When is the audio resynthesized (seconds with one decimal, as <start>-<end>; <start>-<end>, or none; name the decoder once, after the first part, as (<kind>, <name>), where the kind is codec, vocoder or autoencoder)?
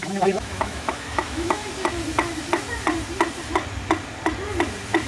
0.0-1.6 (autoencoder, DAC-VAE)